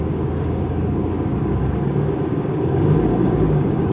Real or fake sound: fake